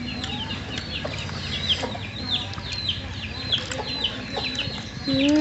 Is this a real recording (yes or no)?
yes